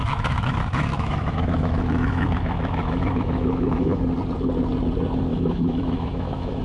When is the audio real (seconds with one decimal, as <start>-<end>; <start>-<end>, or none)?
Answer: 4.0-5.3